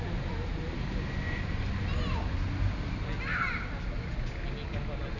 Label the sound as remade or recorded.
recorded